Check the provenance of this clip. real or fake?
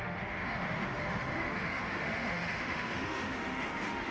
fake